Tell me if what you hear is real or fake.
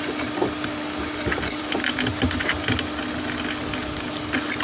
real